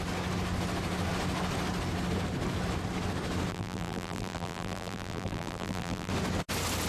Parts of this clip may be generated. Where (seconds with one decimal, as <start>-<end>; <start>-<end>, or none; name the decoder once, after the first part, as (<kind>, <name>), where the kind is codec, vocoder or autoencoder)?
3.5-6.1 (vocoder, BigVGAN v2)